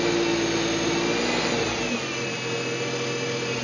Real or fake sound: real